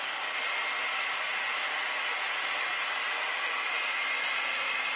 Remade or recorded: recorded